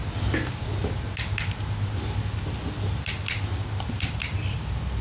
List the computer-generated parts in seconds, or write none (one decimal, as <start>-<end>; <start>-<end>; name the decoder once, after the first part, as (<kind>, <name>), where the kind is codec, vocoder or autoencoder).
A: none